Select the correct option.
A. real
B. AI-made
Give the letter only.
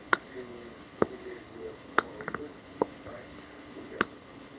B